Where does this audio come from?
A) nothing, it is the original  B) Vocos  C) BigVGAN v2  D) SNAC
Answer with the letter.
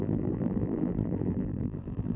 C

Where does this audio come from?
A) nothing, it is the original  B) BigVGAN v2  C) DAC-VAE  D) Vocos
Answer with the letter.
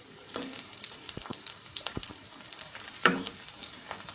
B